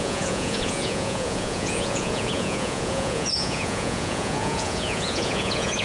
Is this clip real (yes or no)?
no